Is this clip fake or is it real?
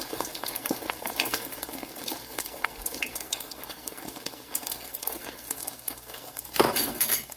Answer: fake